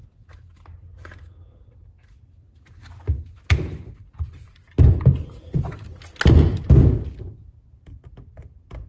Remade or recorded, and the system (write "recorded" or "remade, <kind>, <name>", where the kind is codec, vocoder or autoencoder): recorded